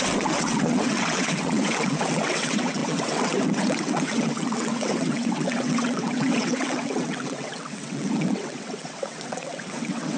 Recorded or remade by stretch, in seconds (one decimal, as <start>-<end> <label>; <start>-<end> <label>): 0.0-10.2 remade